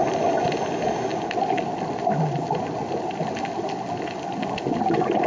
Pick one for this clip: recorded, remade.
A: recorded